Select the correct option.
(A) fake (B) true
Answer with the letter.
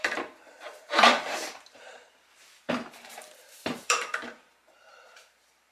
A